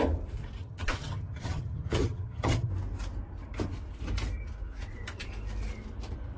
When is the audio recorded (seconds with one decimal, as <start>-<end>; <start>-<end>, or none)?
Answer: 0.0-0.6; 2.7-6.4